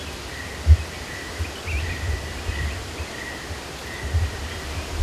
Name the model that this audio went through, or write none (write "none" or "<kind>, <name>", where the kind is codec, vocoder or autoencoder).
none